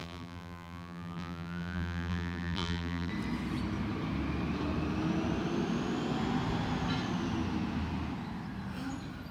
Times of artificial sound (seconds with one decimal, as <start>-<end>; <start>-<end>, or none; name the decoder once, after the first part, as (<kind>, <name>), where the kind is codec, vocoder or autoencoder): 0.0-3.1 (vocoder, BigVGAN v2)